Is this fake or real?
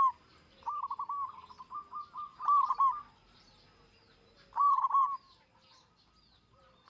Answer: real